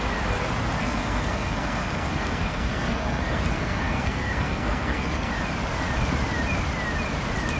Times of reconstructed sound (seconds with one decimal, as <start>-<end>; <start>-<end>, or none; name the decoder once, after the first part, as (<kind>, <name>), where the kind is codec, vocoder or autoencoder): 0.8-5.3 (codec, SNAC)